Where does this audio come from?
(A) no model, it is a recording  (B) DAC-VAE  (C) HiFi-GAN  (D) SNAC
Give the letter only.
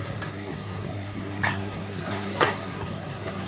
D